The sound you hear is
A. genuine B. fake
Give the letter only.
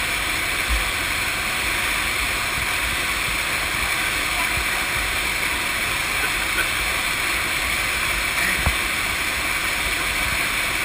A